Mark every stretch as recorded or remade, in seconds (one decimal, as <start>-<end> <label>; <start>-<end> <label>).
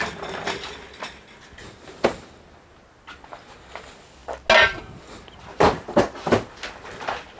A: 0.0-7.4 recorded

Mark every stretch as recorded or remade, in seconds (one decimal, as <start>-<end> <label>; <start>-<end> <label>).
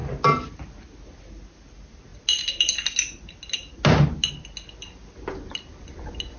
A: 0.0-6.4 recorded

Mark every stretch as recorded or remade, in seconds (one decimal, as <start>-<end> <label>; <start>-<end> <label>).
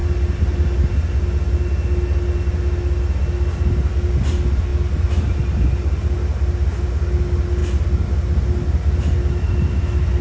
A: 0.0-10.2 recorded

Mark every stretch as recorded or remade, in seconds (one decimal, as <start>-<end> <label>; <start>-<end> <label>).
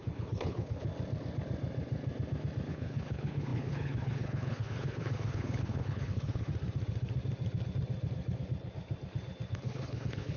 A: 0.0-0.9 remade; 0.9-2.7 recorded; 2.7-6.5 remade; 6.5-9.5 recorded; 9.5-10.4 remade